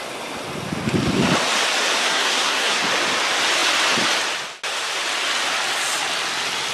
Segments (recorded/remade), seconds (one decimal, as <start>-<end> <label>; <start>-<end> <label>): 0.0-2.0 recorded; 2.0-2.8 remade; 2.8-6.7 recorded